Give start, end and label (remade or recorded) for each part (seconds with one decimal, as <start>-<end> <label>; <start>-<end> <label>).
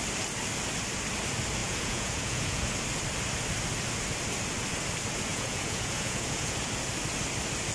0.0-1.6 recorded; 1.6-2.7 remade; 2.7-5.3 recorded; 5.3-6.7 remade; 6.7-7.7 recorded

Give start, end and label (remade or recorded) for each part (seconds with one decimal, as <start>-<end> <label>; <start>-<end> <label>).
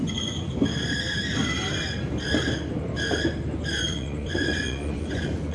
0.0-0.5 remade; 0.5-3.8 recorded; 3.8-5.5 remade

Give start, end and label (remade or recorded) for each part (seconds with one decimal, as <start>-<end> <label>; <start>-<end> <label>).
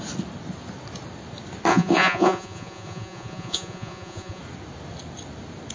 0.0-1.7 recorded; 1.7-4.4 remade; 4.4-5.7 recorded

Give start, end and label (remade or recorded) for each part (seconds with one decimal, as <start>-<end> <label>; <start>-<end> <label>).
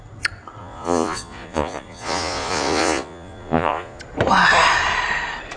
0.0-0.6 recorded; 0.6-4.0 remade; 4.0-5.6 recorded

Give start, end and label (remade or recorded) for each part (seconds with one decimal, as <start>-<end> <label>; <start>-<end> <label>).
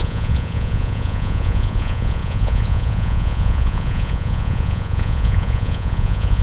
0.0-6.4 remade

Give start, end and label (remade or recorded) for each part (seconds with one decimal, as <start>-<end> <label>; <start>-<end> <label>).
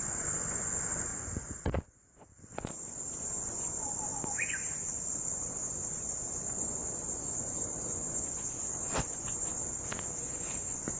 0.0-4.6 remade; 4.6-5.1 recorded; 5.1-9.6 remade; 9.6-10.2 recorded; 10.2-11.0 remade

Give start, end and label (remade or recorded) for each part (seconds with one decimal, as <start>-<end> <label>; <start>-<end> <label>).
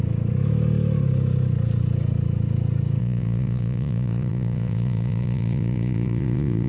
0.0-3.0 recorded; 3.0-6.7 remade